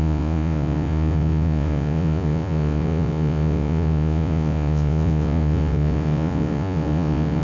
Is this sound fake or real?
fake